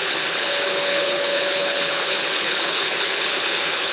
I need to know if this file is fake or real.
fake